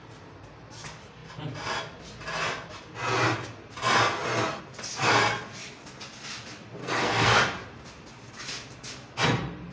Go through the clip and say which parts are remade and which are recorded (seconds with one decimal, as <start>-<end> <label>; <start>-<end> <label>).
0.0-6.8 recorded; 6.8-7.4 remade; 7.4-9.7 recorded